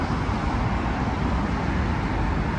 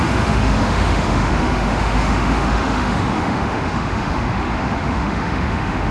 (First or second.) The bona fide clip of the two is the first